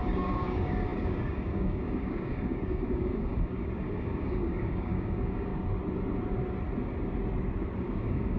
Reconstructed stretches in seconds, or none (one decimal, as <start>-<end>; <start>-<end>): 0.0-5.5; 7.8-8.4